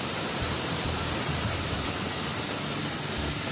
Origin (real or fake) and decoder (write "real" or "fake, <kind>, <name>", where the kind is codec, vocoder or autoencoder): real